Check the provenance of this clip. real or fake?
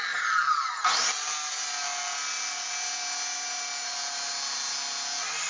real